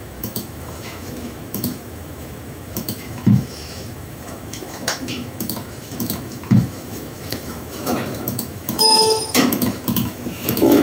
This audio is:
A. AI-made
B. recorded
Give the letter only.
A